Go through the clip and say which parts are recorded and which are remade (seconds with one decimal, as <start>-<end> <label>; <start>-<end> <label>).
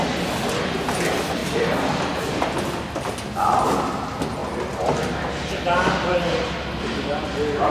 0.0-7.7 recorded